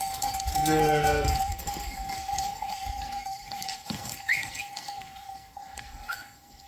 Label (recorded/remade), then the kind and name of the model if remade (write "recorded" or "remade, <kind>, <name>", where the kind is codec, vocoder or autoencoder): remade, codec, SNAC